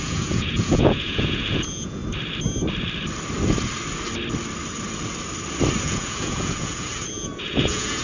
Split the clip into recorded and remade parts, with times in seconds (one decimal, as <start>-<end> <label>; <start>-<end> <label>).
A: 0.0-2.0 remade; 2.0-5.8 recorded; 5.8-8.0 remade